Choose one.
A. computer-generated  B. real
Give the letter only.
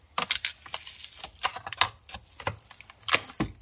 B